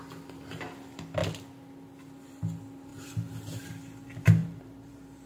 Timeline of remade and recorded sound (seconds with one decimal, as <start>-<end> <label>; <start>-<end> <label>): 0.0-2.9 recorded; 2.9-3.7 remade; 3.7-4.4 recorded; 4.4-5.3 remade